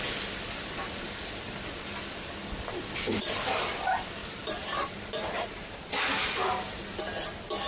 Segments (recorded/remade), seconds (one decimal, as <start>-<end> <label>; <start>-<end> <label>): 0.0-4.2 recorded; 4.2-5.9 remade; 5.9-7.7 recorded